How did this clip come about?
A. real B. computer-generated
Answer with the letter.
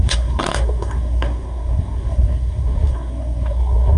B